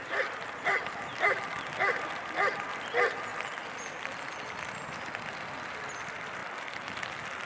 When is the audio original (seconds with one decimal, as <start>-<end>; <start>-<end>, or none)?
3.3-5.7; 6.4-7.5